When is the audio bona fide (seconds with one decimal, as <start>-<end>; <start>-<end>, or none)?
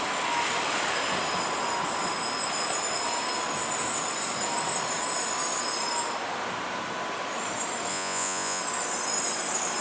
0.0-7.9; 8.6-9.8